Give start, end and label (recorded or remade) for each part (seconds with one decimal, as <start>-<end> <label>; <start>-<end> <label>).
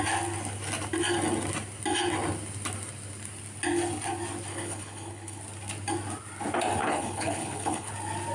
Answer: 0.0-4.5 recorded; 4.5-5.4 remade; 5.4-6.8 recorded; 6.8-7.9 remade; 7.9-8.3 recorded